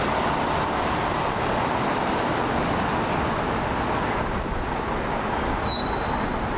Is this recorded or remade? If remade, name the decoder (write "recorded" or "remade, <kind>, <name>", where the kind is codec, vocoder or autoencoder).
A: recorded